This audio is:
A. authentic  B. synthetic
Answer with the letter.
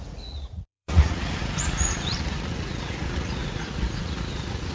B